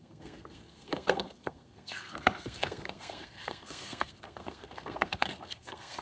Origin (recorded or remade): remade